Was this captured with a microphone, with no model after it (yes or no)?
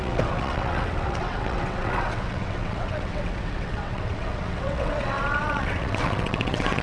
no